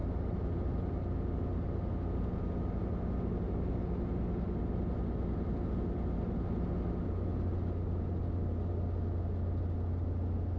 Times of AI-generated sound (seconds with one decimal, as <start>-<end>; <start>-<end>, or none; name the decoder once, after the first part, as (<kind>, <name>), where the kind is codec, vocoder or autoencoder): none